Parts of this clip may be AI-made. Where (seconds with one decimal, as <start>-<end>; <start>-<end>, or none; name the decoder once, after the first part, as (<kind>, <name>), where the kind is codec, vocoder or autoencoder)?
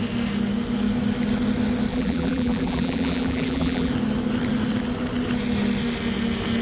1.9-3.9 (vocoder, BigVGAN v2)